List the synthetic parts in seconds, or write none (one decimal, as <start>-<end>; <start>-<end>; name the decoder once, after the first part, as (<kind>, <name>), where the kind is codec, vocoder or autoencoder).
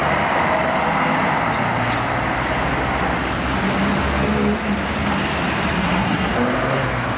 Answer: 5.8-6.3 (codec, SNAC)